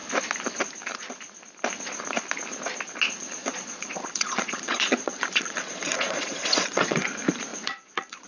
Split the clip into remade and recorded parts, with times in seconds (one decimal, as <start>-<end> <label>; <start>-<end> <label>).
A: 0.0-3.4 recorded; 3.4-7.1 remade; 7.1-7.5 recorded; 7.5-8.3 remade